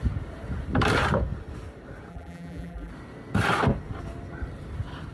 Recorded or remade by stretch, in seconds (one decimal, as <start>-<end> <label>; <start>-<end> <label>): 0.0-2.1 recorded; 2.1-2.9 remade; 2.9-5.1 recorded